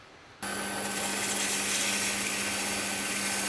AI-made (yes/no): no